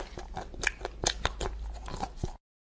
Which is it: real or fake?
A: real